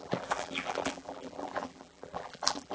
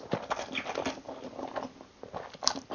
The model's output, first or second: first